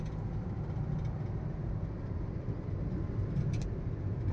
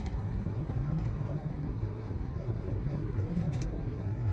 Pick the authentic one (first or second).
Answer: first